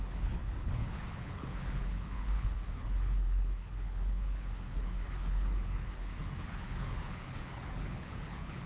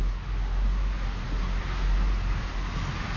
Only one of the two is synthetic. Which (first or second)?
first